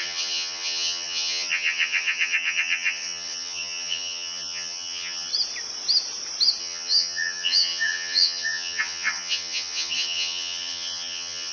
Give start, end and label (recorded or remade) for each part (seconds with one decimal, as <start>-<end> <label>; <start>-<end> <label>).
0.0-5.3 remade; 5.3-6.6 recorded; 6.6-11.5 remade